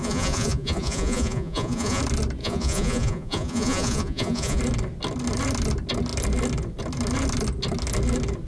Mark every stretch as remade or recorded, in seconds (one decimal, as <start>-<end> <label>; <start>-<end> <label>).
0.0-2.0 remade; 2.0-2.4 recorded; 2.4-4.6 remade; 4.6-8.5 recorded